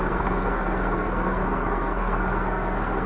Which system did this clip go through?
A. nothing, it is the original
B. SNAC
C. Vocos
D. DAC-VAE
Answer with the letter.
B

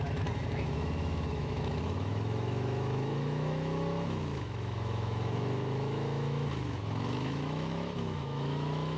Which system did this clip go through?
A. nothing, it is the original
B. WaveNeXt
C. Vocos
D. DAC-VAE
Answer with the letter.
D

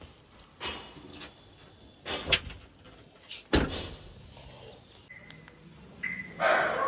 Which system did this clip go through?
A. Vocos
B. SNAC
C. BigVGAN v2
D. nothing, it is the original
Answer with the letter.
D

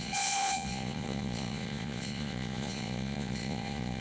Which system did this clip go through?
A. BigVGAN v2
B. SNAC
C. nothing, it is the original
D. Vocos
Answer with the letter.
D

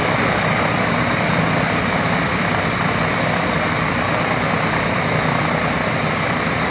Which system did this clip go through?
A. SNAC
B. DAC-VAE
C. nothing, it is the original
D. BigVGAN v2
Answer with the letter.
C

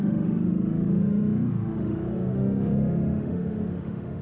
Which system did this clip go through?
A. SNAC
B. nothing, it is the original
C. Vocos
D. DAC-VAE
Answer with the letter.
D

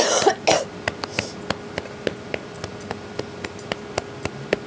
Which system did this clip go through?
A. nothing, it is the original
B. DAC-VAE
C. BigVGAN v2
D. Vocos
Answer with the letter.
A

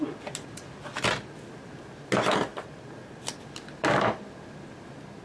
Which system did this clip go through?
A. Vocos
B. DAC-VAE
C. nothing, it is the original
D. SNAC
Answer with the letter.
C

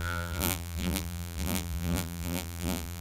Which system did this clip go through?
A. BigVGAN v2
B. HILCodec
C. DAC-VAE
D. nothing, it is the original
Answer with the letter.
A